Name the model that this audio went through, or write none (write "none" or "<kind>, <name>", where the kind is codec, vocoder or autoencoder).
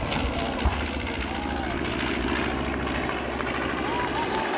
none